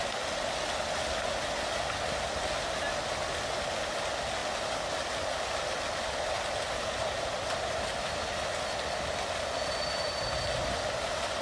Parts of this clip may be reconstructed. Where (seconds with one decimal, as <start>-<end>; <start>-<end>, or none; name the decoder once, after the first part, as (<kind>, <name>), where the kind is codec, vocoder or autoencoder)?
none